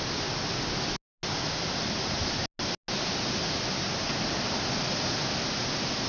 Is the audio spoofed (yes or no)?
no